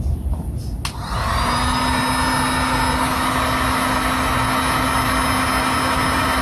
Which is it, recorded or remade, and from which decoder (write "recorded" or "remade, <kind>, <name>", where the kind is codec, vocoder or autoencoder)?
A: recorded